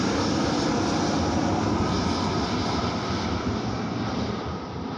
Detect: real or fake real